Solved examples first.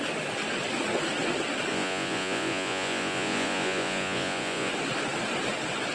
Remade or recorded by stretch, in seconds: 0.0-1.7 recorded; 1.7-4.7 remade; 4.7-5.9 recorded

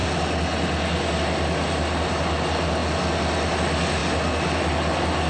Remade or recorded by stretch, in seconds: 0.0-5.3 recorded

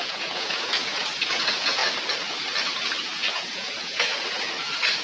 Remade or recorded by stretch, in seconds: 0.0-1.8 remade; 1.8-3.3 recorded; 3.3-4.1 remade; 4.1-5.0 recorded

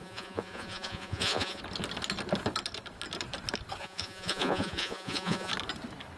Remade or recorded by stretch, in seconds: 0.0-1.6 remade; 1.6-3.8 recorded; 3.8-5.5 remade; 5.5-6.2 recorded

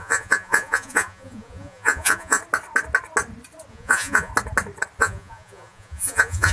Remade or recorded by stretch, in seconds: 0.0-2.4 remade; 2.4-3.7 recorded; 3.7-4.3 remade; 4.3-5.0 recorded; 5.0-6.5 remade

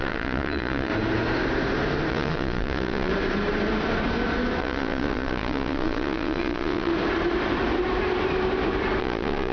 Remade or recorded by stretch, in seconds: 0.0-0.9 remade; 0.9-2.1 recorded; 2.1-3.1 remade; 3.1-4.6 recorded; 4.6-6.9 remade; 6.9-9.0 recorded; 9.0-9.5 remade

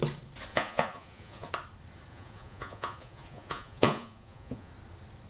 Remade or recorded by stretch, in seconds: 0.0-0.5 recorded; 0.5-1.5 remade; 1.5-2.1 recorded; 2.1-4.7 remade; 4.7-5.3 recorded